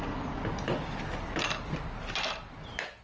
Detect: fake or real real